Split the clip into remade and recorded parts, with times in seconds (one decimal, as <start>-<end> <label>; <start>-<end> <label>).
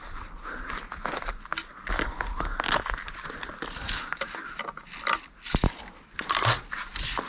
0.0-7.3 recorded